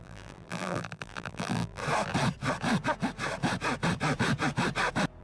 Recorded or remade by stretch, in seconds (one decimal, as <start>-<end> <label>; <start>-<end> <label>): 0.0-1.8 remade; 1.8-5.2 recorded